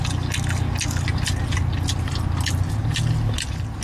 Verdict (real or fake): real